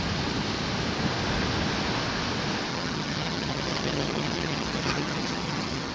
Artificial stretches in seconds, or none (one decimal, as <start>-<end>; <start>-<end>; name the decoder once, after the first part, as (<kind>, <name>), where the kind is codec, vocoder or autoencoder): 2.7-5.9 (vocoder, HiFi-GAN)